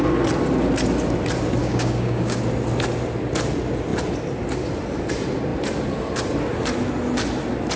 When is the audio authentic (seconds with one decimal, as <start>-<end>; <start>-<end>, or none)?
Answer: 0.0-1.6; 2.4-7.8